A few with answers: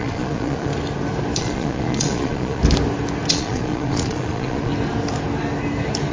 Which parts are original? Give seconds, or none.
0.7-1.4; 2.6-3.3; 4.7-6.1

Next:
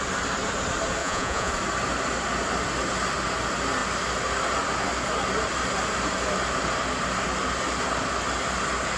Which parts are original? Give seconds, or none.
0.0-1.0; 1.5-9.0

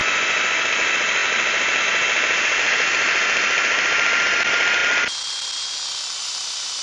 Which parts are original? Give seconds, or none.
0.6-6.8

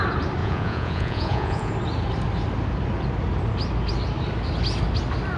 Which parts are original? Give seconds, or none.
0.0-0.4; 1.7-5.4

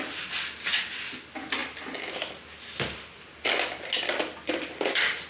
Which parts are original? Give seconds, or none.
0.0-5.3

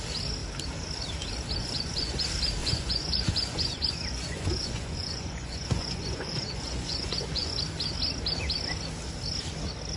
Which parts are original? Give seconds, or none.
0.0-1.6; 2.2-2.6; 7.6-10.0

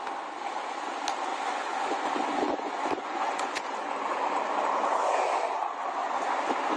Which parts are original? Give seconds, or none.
0.0-1.3; 4.0-6.8

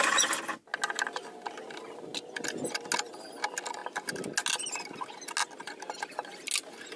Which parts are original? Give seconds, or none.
0.0-7.0